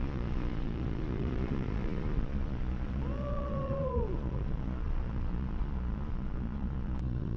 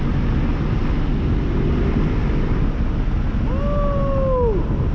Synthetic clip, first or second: first